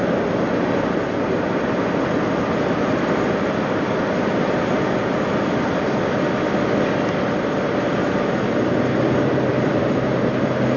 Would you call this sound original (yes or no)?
yes